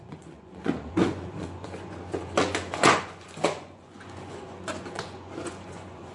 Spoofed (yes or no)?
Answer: yes